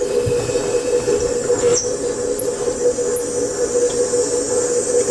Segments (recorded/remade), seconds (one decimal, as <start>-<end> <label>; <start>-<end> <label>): 0.0-5.1 recorded